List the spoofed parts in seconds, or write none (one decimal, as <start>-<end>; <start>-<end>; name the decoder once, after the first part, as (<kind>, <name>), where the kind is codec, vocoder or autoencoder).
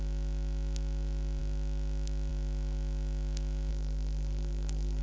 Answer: 3.7-5.0 (codec, SNAC)